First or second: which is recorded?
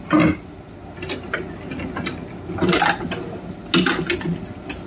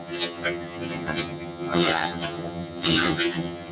first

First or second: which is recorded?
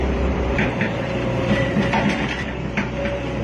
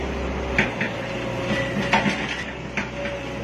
second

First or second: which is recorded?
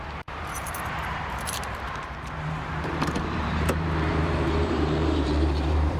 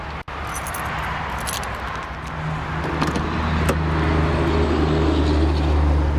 second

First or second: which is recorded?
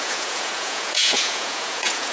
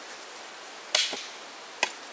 second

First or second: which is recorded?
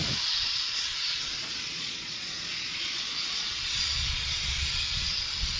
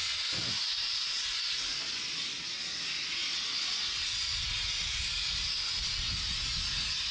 second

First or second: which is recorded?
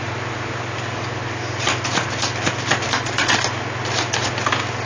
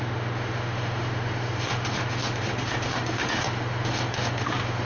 first